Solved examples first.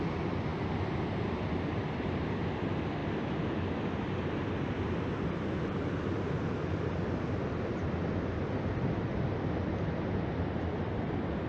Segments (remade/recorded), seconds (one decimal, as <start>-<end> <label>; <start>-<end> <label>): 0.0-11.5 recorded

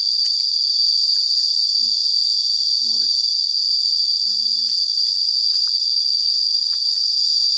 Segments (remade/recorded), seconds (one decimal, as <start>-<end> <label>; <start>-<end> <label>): 0.0-7.6 recorded

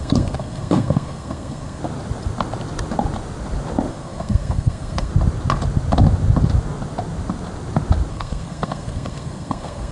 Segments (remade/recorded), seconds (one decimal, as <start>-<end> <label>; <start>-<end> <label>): 0.0-1.8 remade; 1.8-3.9 recorded; 3.9-5.1 remade; 5.1-8.1 recorded; 8.1-9.9 remade

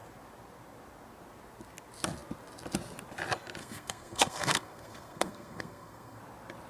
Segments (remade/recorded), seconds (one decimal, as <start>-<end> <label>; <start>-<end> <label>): 0.0-3.6 recorded; 3.6-6.2 remade; 6.2-6.7 recorded

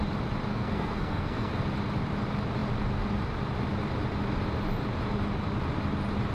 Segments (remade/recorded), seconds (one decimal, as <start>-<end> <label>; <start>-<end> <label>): 0.0-0.5 recorded; 0.5-1.5 remade; 1.5-6.3 recorded

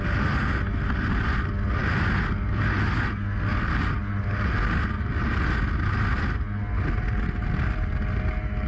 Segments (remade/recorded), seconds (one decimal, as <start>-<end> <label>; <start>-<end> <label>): 0.0-8.7 recorded